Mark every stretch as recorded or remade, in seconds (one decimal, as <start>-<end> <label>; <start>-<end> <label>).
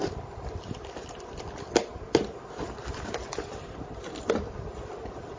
0.0-5.4 recorded